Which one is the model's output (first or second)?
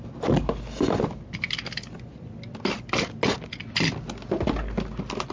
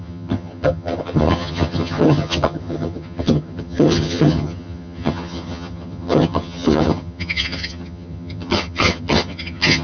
second